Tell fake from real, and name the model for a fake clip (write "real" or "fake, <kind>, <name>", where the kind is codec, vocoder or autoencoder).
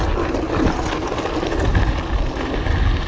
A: real